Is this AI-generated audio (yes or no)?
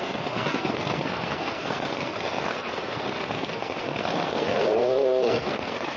yes